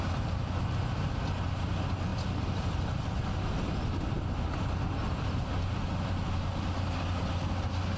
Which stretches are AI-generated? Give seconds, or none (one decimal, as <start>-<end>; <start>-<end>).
none